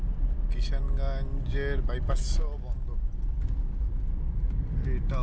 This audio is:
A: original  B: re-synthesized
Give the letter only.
A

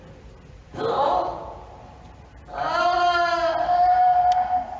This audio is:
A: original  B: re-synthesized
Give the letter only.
A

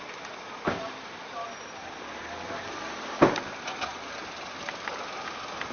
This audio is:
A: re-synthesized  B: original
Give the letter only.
B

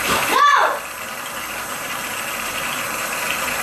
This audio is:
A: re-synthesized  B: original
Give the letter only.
A